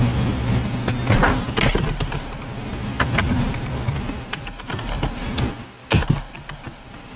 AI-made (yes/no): no